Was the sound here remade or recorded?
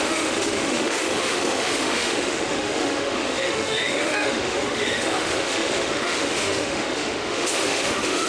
remade